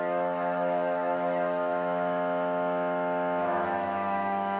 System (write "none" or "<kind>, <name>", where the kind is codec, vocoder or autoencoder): autoencoder, DAC-VAE